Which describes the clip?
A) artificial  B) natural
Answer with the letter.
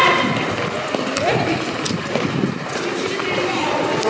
B